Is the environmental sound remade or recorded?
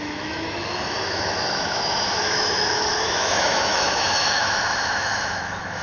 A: remade